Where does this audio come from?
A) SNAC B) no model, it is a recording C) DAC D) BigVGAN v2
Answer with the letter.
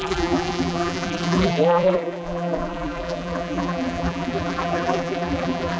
D